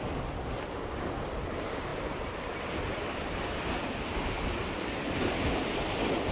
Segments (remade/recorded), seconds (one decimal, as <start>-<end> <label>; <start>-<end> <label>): 0.0-6.3 recorded